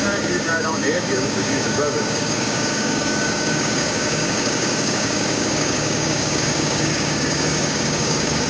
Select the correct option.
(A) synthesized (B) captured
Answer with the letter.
A